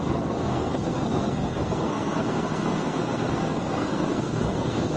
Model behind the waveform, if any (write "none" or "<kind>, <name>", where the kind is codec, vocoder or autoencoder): codec, SNAC